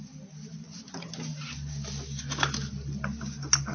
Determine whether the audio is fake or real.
real